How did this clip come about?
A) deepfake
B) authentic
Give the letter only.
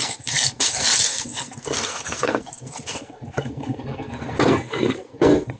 A